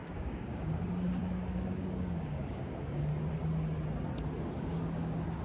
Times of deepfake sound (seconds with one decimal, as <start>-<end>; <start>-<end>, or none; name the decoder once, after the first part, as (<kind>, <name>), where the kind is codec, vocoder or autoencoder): 0.0-3.1 (codec, DAC); 4.5-5.4